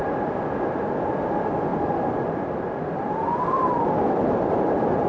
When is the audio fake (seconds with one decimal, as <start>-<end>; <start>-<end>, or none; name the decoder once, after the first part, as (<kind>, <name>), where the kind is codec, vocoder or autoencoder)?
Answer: 1.1-5.1 (vocoder, BigVGAN v2)